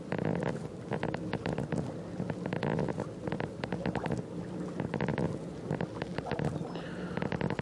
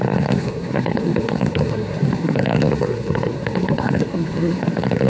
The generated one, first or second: second